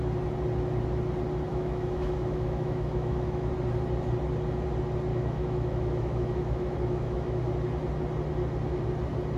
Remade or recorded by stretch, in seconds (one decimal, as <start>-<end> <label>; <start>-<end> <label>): 0.0-1.5 recorded; 1.5-3.5 remade; 3.5-5.1 recorded; 5.1-7.4 remade; 7.4-9.4 recorded